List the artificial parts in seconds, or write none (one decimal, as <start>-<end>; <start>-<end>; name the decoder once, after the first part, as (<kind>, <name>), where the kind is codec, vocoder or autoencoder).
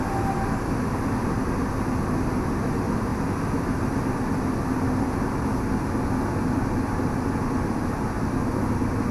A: none